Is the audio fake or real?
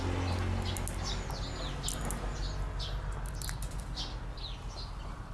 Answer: real